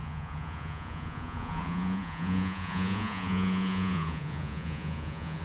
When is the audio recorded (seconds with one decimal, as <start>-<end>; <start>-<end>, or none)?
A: none